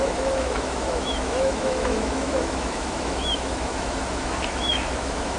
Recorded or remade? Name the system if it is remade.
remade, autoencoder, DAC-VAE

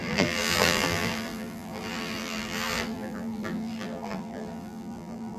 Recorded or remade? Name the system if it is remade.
remade, vocoder, BigVGAN v2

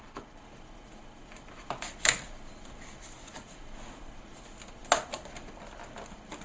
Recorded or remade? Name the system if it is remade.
recorded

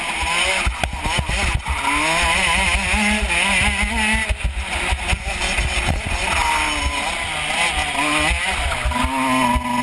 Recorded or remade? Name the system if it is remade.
recorded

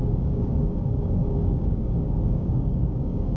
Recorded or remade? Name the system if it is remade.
remade, codec, DAC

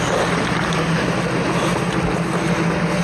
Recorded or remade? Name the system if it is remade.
recorded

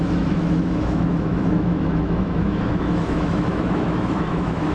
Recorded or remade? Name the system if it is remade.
remade, autoencoder, DAC-VAE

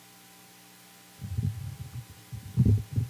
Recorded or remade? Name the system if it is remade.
recorded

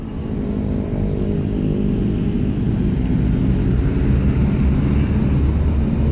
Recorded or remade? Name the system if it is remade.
recorded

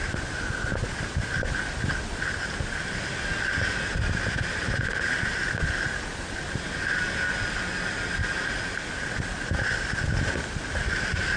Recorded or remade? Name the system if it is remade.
recorded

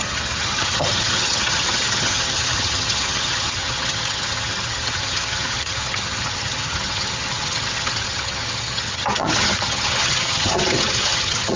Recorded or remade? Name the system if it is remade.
remade, vocoder, HiFi-GAN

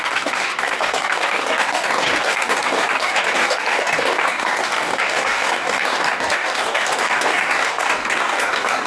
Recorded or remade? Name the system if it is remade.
remade, codec, DAC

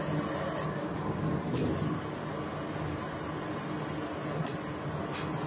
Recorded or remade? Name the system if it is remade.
recorded